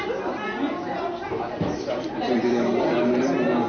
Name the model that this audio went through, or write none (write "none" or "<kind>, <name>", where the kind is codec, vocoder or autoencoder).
none